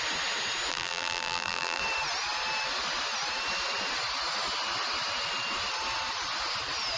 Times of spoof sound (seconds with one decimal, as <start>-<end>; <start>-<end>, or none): 0.7-1.8